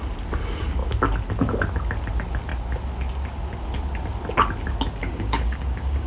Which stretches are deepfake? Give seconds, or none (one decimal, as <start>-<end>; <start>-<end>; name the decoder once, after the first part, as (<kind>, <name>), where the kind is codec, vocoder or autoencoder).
5.0-6.1 (codec, DAC)